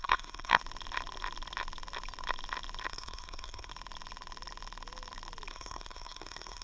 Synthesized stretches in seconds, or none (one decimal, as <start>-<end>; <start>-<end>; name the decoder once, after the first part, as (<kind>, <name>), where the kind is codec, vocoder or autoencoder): 0.0-0.6 (codec, SNAC); 2.9-3.7; 5.5-6.6